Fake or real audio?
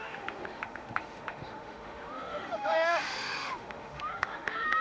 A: fake